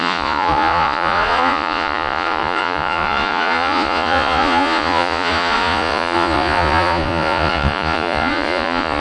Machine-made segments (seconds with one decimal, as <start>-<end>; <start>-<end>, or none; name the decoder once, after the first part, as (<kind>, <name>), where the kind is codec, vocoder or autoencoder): 0.0-9.0 (vocoder, Vocos)